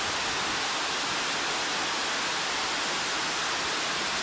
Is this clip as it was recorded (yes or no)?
yes